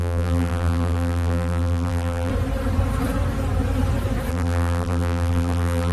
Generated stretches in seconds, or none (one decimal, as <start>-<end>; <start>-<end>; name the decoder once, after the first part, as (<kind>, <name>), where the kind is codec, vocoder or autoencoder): 0.0-2.3 (vocoder, BigVGAN v2); 4.3-5.9